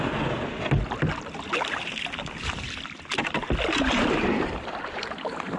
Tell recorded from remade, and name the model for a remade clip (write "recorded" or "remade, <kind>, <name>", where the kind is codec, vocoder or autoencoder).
recorded